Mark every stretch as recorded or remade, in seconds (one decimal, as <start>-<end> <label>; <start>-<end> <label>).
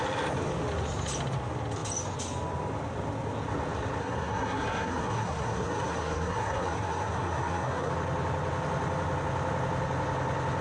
0.0-4.0 recorded; 4.0-7.9 remade; 7.9-10.6 recorded